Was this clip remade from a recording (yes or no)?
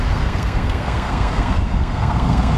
yes